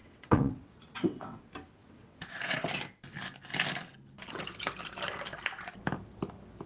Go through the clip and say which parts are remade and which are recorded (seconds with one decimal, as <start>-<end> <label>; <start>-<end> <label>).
0.0-1.4 remade; 1.4-1.8 recorded; 1.8-2.7 remade; 2.7-6.7 recorded